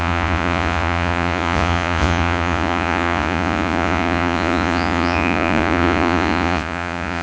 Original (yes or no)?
no